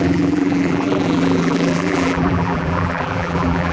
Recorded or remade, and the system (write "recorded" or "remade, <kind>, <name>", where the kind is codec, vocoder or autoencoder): remade, vocoder, BigVGAN v2